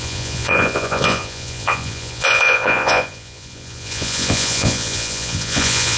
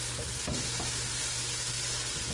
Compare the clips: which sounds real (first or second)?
second